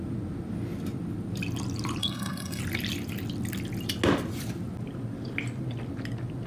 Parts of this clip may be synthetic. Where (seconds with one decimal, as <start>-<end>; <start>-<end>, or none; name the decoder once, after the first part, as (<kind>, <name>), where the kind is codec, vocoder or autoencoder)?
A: 2.0-2.6 (codec, SNAC)